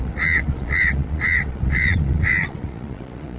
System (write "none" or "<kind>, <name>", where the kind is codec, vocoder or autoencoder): vocoder, Vocos